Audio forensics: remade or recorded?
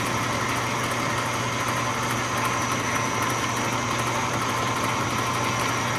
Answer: recorded